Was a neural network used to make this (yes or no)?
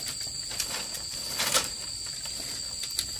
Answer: yes